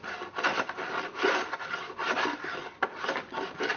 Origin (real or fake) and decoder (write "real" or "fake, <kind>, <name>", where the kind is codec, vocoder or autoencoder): real